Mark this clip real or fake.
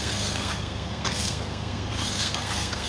fake